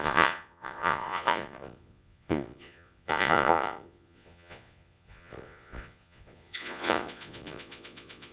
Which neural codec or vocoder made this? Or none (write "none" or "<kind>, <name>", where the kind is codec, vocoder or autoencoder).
vocoder, Vocos